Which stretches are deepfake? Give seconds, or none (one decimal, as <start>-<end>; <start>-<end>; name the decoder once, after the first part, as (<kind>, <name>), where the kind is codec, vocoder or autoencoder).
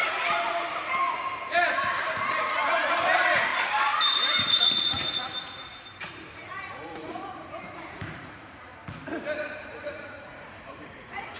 2.4-3.5 (vocoder, Vocos); 4.5-8.7; 9.6-11.4